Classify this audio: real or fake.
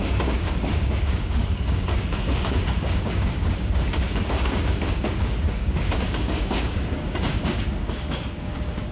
fake